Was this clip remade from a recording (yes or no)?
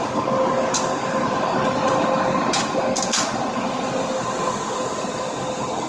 no